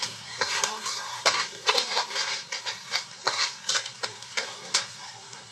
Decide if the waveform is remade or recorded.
remade